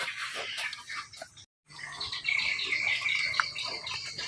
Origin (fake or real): fake